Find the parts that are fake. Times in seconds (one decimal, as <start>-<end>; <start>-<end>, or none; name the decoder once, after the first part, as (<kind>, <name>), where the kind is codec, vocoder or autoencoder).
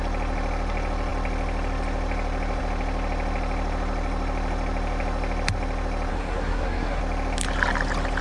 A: 6.1-7.0 (codec, SNAC)